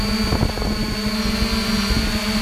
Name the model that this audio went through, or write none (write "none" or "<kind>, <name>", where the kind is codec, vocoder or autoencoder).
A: none